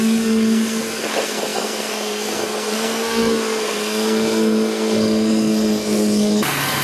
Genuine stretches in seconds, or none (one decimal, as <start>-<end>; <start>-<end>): none